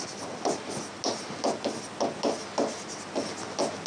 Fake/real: real